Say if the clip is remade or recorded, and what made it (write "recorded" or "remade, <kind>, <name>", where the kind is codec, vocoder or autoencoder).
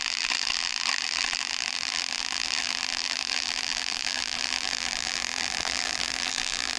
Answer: remade, vocoder, BigVGAN v2